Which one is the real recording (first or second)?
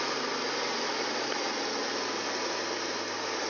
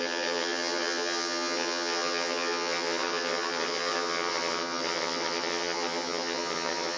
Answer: first